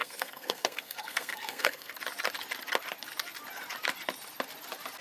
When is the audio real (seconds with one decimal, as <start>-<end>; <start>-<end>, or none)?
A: 1.9-5.0